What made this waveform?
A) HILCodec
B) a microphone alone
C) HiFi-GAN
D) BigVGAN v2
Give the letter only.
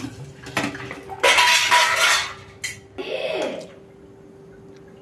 B